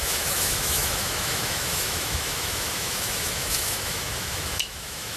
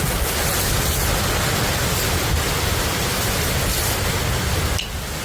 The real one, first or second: second